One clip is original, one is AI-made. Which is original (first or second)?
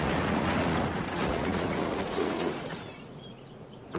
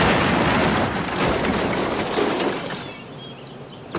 second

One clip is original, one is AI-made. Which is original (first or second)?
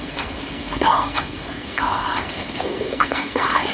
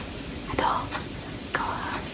second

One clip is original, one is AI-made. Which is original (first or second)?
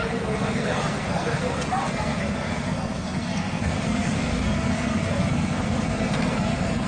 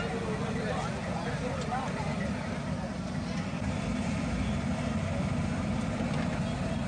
second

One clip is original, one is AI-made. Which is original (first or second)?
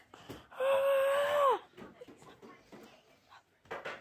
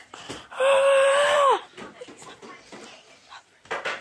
first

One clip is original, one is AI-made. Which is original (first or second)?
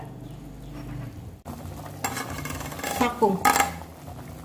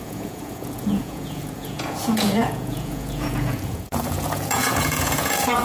first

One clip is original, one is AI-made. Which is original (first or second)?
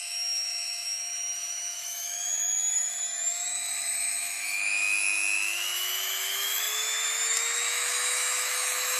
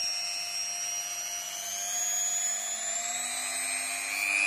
second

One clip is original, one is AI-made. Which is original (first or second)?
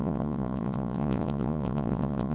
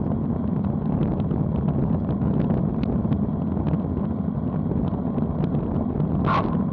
second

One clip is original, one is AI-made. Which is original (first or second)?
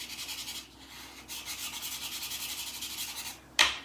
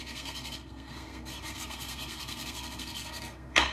first